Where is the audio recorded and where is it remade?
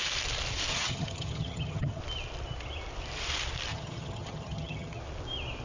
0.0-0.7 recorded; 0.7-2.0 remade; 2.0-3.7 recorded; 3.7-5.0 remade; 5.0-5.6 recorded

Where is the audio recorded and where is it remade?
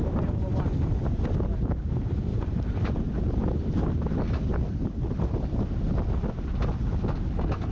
0.0-2.3 recorded; 2.3-3.1 remade; 3.1-7.7 recorded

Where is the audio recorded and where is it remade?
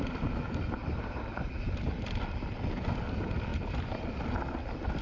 0.0-0.8 recorded; 0.8-1.5 remade; 1.5-5.0 recorded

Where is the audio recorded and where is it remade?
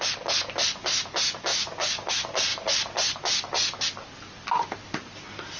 0.0-5.6 recorded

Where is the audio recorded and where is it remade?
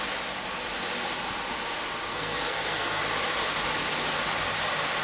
0.0-2.1 recorded; 2.1-3.0 remade; 3.0-5.0 recorded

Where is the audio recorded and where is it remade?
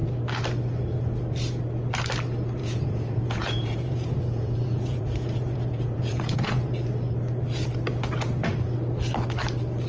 0.0-2.6 recorded; 2.6-6.7 remade; 6.7-9.9 recorded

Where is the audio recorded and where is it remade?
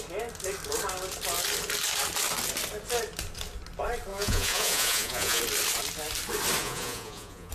0.0-4.1 recorded; 4.1-5.4 remade; 5.4-6.6 recorded; 6.6-7.5 remade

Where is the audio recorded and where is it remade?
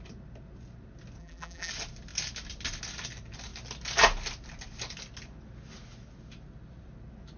0.0-1.2 recorded; 1.2-1.7 remade; 1.7-7.4 recorded